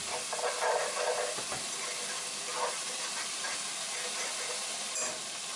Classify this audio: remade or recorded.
recorded